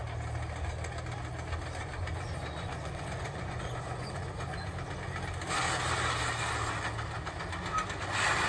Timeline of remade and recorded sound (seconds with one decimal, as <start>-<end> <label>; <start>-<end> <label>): 0.0-1.8 recorded; 1.8-4.7 remade; 4.7-8.5 recorded